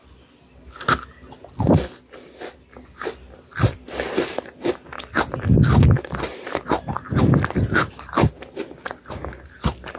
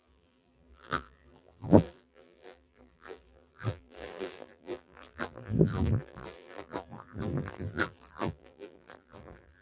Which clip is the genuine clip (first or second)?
first